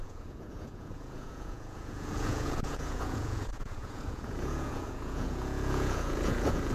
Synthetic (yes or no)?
yes